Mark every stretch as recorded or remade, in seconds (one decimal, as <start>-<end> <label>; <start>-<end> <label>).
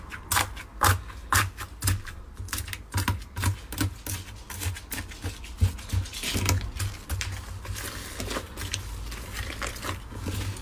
0.0-10.6 recorded